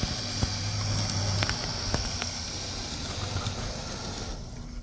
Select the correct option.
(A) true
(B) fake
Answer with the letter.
A